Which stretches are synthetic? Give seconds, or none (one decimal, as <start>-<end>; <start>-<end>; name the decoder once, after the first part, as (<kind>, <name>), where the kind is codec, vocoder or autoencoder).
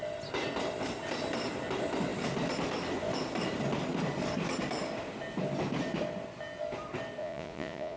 7.2-8.0 (vocoder, Vocos)